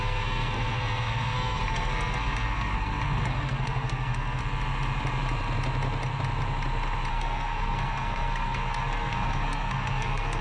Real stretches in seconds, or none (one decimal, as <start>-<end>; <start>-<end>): 4.4-7.1